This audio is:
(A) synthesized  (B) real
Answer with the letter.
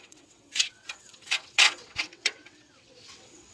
A